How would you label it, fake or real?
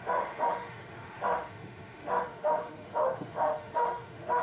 fake